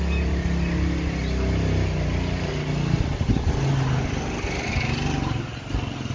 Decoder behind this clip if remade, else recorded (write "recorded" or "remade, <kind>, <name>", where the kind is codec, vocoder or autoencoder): recorded